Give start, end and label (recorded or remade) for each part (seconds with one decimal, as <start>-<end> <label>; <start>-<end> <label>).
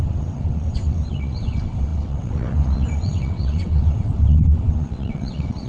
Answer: 0.0-5.7 remade